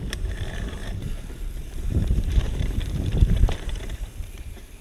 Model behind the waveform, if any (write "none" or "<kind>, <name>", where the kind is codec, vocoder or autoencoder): vocoder, BigVGAN v2